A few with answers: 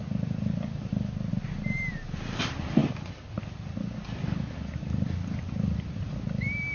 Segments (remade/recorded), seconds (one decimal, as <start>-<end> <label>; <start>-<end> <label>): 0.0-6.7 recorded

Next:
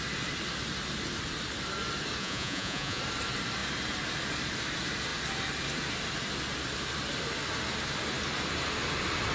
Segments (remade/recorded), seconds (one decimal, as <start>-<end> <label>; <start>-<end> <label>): 0.0-2.2 recorded; 2.2-3.0 remade; 3.0-9.3 recorded

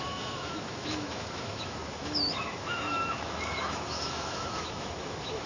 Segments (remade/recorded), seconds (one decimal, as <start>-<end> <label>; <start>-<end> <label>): 0.0-5.5 remade